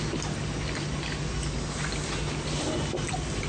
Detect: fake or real real